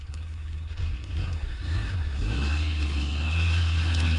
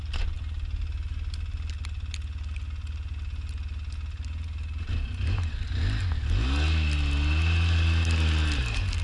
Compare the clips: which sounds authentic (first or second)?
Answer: second